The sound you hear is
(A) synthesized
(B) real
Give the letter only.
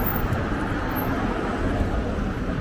B